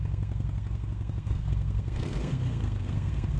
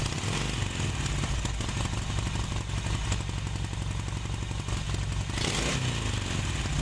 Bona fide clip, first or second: second